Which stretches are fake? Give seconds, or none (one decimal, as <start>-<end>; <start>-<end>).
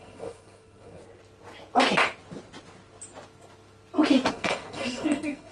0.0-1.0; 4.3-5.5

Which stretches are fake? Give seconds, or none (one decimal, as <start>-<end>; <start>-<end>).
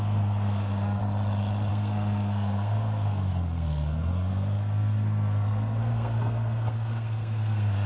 0.0-1.0; 1.7-7.9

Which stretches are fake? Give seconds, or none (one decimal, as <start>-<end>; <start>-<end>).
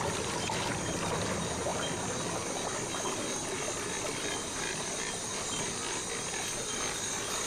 none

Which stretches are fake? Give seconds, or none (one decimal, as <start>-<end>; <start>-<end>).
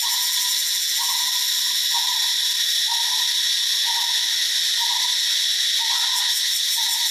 none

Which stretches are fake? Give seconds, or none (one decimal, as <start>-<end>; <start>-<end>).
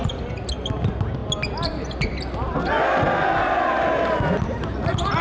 none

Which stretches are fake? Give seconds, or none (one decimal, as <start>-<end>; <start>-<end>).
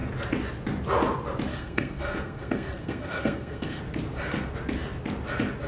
1.5-3.8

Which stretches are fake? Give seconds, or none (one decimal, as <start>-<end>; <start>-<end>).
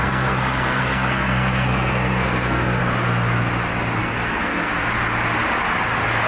0.0-2.8; 4.0-4.7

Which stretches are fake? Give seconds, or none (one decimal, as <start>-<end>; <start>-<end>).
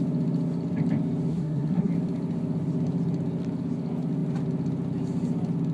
1.3-1.9